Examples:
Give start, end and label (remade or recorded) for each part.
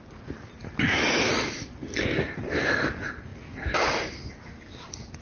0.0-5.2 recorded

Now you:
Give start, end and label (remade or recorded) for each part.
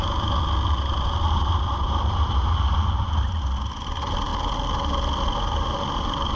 0.0-1.7 recorded; 1.7-3.3 remade; 3.3-6.4 recorded